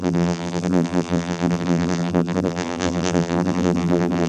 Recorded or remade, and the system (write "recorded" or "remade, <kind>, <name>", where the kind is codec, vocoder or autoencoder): remade, vocoder, BigVGAN v2